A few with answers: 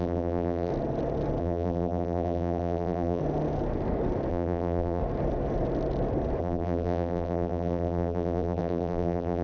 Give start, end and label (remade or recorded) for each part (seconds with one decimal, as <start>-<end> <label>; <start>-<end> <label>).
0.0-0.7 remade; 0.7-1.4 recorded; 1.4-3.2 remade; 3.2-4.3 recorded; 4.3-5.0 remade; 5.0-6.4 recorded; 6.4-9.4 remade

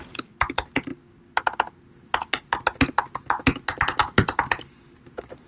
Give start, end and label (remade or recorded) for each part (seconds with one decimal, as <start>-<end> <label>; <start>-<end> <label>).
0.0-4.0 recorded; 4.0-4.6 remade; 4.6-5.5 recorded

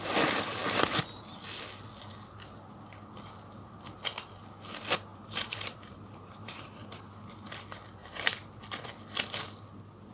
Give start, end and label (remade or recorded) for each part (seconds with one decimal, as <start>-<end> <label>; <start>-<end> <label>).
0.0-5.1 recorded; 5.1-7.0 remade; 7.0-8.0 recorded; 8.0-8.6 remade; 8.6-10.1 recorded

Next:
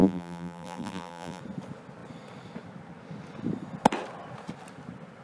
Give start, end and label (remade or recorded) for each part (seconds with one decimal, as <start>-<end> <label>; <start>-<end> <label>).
0.0-1.4 remade; 1.4-5.2 recorded

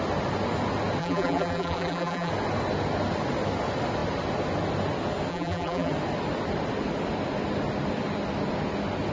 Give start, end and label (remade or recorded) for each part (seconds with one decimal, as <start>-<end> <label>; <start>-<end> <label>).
0.0-1.0 recorded; 1.0-2.3 remade; 2.3-5.3 recorded; 5.3-5.9 remade; 5.9-9.1 recorded

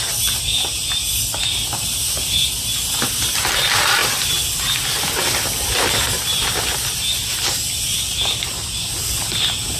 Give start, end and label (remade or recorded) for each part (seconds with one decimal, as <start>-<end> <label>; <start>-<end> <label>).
0.0-9.8 recorded

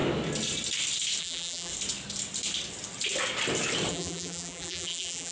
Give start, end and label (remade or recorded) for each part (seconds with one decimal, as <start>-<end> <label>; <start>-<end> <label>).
0.0-1.2 recorded; 1.2-1.7 remade; 1.7-3.9 recorded; 3.9-5.3 remade